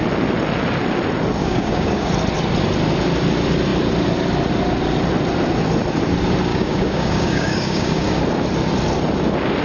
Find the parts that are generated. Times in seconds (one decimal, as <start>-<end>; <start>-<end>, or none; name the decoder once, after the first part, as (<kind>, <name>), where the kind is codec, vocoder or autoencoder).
1.4-2.1 (codec, DAC); 6.5-8.2

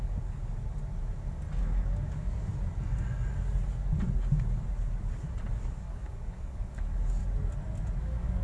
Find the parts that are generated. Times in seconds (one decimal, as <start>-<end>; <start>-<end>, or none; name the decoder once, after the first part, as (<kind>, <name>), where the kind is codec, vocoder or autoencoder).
0.0-0.4 (codec, DAC); 1.6-2.5; 5.6-7.2; 8.0-8.4

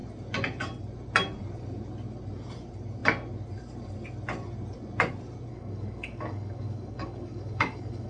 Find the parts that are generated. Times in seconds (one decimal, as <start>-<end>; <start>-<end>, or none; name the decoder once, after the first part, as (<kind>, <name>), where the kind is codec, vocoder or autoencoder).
5.5-8.1 (codec, DAC)

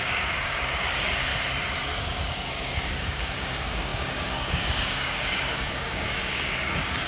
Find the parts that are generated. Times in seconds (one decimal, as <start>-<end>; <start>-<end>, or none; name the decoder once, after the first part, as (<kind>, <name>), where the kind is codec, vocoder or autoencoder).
0.0-1.3 (codec, DAC); 2.0-7.1

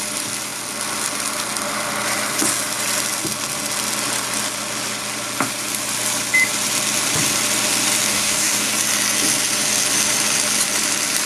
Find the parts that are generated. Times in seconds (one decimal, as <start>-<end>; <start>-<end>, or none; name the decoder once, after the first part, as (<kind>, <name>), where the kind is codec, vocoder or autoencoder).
8.1-8.7 (codec, DAC)

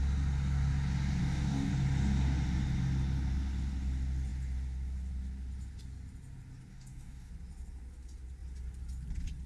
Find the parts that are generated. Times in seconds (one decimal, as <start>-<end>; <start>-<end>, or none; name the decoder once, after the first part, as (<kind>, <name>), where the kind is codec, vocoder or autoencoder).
1.2-1.7 (codec, DAC); 6.7-7.3